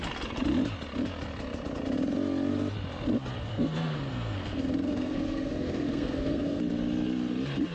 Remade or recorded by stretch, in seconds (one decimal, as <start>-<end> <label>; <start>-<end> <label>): 0.0-3.5 recorded; 3.5-6.6 remade; 6.6-7.7 recorded